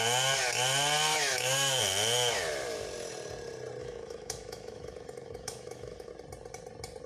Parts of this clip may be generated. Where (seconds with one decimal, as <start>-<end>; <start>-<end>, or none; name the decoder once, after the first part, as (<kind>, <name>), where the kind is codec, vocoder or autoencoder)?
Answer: 1.1-1.8 (autoencoder, DAC-VAE); 3.8-6.1

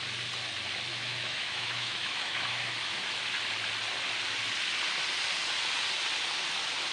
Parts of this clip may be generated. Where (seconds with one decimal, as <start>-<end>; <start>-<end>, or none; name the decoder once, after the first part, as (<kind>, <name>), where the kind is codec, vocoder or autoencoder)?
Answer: 0.9-3.1 (autoencoder, DAC-VAE)

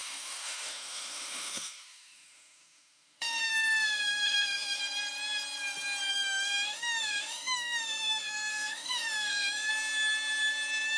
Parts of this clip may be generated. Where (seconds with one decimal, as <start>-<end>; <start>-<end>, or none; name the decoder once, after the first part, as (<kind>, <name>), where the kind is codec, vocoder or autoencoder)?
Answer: 0.0-4.8 (autoencoder, DAC-VAE); 6.1-9.7